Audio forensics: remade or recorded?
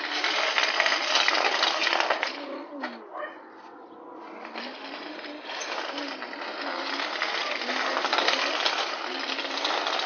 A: recorded